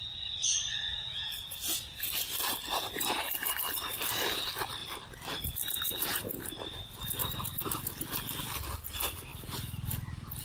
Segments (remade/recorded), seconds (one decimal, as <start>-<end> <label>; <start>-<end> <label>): 0.0-0.9 recorded; 0.9-3.5 remade; 3.5-4.8 recorded; 4.8-7.2 remade; 7.2-10.4 recorded